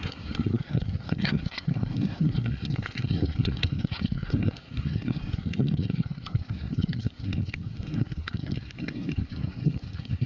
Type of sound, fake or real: fake